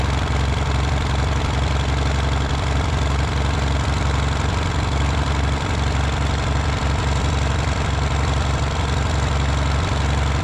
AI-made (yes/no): yes